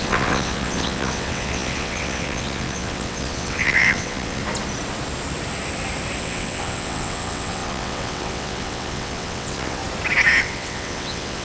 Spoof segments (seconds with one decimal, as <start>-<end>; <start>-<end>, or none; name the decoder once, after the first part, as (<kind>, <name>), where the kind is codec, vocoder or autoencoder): 0.0-4.4 (vocoder, WaveNeXt); 6.2-9.8; 10.4-11.4